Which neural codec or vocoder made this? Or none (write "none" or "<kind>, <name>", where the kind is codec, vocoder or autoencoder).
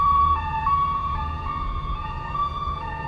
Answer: vocoder, Vocos